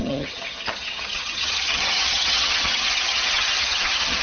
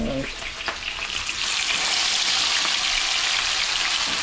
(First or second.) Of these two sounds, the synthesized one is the first